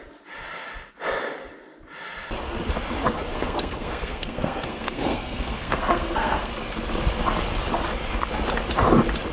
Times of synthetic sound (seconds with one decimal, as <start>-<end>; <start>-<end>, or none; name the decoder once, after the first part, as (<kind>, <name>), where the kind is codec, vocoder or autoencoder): 3.3-6.5 (codec, SNAC)

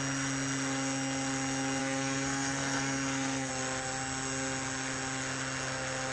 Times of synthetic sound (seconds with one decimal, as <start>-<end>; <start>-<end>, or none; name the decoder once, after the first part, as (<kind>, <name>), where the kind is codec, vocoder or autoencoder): 1.8-3.5 (codec, SNAC)

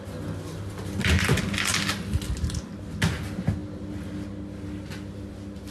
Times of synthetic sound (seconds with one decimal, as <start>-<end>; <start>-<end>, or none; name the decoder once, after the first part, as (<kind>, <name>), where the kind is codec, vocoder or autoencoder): none

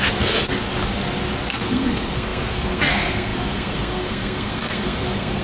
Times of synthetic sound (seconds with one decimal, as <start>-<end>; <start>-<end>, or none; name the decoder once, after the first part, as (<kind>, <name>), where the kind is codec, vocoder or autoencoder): 0.0-0.4 (codec, SNAC); 1.5-5.4

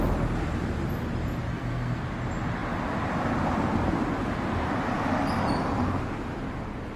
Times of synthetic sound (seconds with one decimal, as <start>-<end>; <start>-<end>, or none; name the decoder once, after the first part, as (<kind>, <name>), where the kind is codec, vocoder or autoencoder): 1.5-2.0 (codec, SNAC)

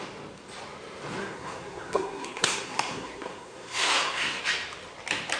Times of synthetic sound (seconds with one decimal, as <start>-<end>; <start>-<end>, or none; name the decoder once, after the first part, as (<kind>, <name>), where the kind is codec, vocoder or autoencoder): 1.2-4.4 (codec, SNAC)